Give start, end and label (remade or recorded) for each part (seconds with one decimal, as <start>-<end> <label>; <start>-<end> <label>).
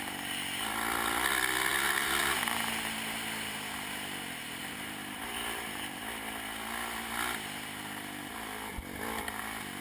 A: 0.0-1.7 recorded; 1.7-2.2 remade; 2.2-4.6 recorded; 4.6-6.0 remade; 6.0-9.8 recorded